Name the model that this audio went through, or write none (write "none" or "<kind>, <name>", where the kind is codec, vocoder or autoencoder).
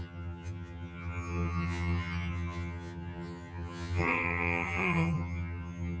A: vocoder, HiFi-GAN